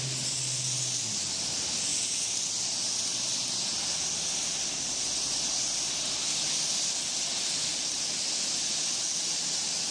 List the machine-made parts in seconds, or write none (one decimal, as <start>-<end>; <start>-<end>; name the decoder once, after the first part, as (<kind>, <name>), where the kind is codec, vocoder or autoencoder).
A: none